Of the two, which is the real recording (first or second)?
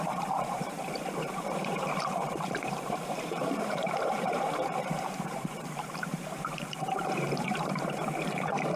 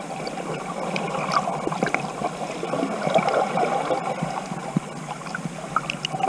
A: second